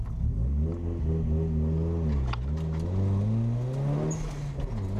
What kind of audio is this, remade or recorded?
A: recorded